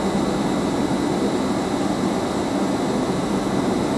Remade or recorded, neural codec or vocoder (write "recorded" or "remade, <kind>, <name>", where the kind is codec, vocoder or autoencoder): recorded